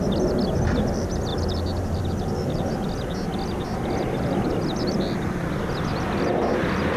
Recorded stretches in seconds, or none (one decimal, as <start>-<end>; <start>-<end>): 0.0-7.0